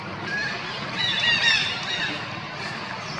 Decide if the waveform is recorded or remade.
recorded